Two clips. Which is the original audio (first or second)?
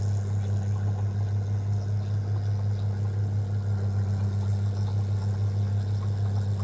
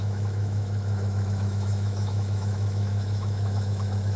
first